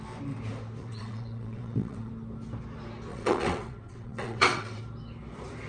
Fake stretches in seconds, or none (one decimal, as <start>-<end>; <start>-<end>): 0.8-2.1; 3.1-4.8